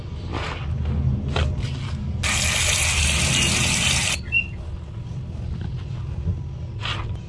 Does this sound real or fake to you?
real